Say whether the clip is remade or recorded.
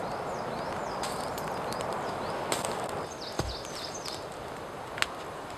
recorded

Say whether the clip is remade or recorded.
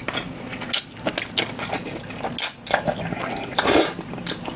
recorded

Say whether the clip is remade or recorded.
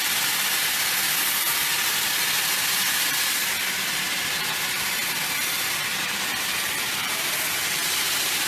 remade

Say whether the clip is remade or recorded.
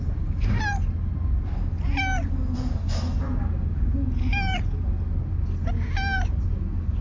recorded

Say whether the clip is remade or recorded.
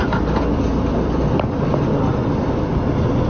remade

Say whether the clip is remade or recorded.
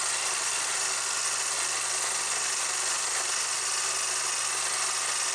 recorded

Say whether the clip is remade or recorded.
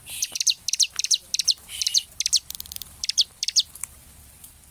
remade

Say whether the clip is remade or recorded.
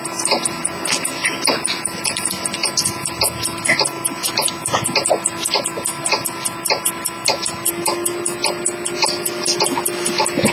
recorded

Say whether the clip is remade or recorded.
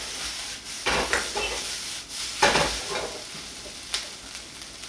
recorded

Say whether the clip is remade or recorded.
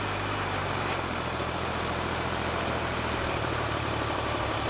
remade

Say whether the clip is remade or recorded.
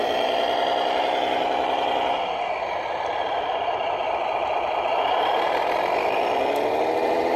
remade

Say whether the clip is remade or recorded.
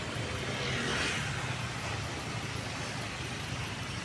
recorded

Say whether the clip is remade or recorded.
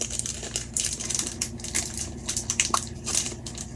remade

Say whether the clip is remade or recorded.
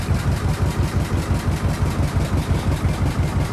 recorded